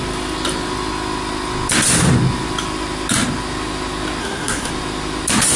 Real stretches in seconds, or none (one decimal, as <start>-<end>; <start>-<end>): 0.0-4.2; 4.7-5.6